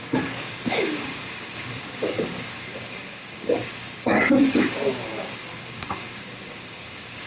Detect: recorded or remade remade